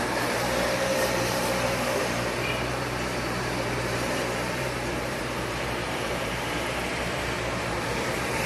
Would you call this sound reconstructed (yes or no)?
yes